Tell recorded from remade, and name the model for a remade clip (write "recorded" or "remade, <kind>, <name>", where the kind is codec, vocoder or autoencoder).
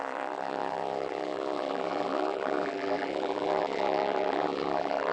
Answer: remade, vocoder, BigVGAN v2